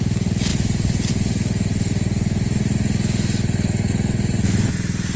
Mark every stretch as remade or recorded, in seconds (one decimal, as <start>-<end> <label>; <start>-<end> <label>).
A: 0.0-5.2 recorded